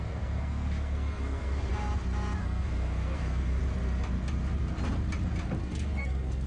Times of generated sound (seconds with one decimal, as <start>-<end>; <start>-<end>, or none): 0.0-1.7; 2.4-3.6; 5.6-6.5